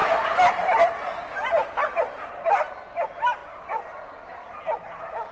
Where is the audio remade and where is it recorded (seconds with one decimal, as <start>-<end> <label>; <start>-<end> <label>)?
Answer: 0.0-5.3 recorded